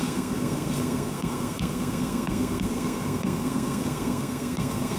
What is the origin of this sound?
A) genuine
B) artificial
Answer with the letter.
B